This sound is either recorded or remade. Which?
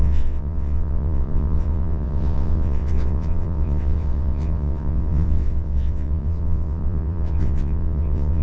remade